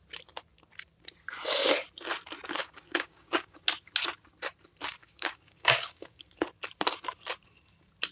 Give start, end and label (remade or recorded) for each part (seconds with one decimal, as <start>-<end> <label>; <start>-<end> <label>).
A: 0.0-2.6 recorded; 2.6-3.6 remade; 3.6-5.0 recorded; 5.0-6.3 remade; 6.3-8.1 recorded